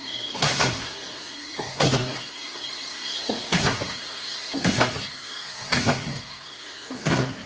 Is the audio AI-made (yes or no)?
yes